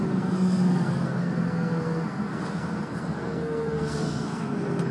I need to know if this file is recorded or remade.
remade